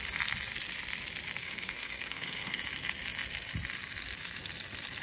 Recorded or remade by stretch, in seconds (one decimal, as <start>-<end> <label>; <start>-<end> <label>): 0.0-1.4 recorded; 1.4-2.6 remade; 2.6-5.0 recorded